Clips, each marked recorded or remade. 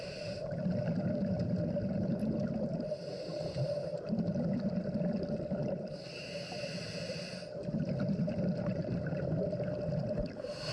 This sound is recorded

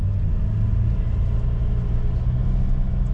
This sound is recorded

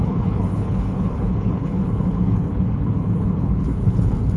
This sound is remade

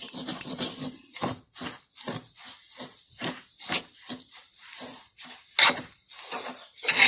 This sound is recorded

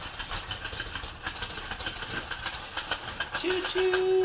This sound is recorded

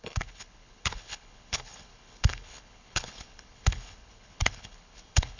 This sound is remade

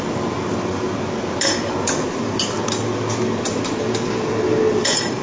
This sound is recorded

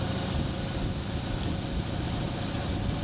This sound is recorded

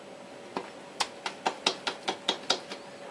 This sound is recorded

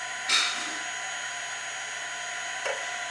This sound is recorded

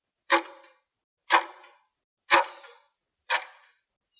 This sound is recorded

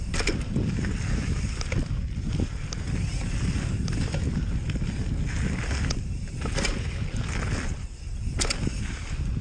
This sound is recorded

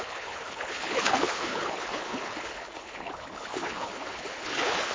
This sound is remade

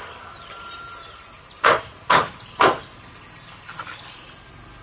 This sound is recorded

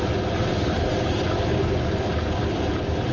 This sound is recorded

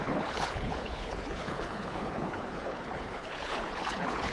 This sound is remade